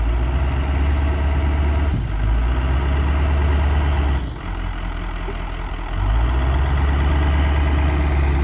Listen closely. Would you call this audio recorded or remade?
recorded